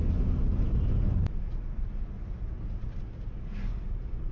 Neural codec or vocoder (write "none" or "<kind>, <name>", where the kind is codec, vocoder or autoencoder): none